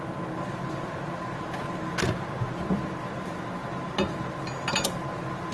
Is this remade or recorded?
recorded